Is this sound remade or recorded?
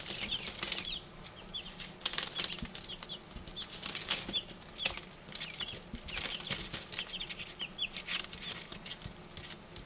recorded